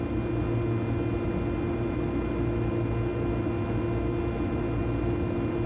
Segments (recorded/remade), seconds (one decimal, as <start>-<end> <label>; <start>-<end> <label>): 0.0-5.7 recorded